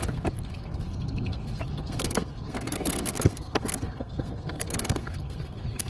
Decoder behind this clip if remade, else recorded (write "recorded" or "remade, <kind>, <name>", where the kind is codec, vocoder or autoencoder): remade, codec, SNAC